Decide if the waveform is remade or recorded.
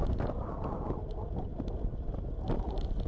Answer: recorded